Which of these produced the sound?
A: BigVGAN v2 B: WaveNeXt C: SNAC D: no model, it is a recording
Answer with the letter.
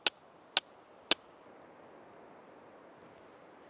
D